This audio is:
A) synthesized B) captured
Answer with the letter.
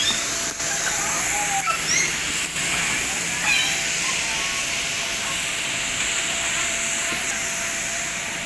B